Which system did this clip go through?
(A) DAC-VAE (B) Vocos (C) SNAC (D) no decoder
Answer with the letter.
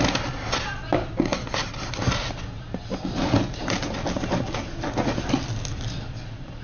D